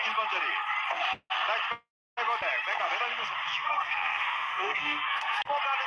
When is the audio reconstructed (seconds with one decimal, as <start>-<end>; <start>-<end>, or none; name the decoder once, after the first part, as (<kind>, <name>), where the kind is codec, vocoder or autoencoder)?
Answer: 3.5-5.5 (codec, SNAC)